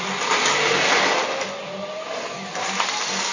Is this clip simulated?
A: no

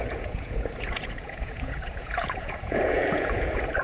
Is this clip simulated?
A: yes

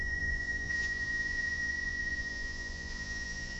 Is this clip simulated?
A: yes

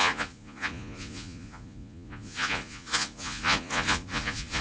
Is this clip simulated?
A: yes